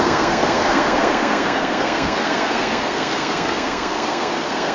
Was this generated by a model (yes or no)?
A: yes